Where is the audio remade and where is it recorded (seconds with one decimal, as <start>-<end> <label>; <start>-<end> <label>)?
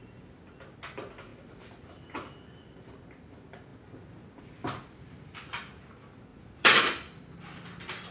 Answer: 0.0-6.3 recorded; 6.3-6.8 remade; 6.8-8.1 recorded